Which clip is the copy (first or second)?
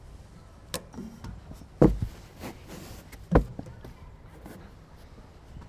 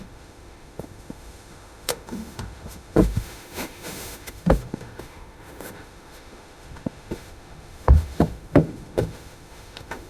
second